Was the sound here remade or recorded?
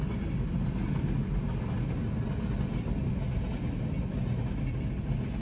recorded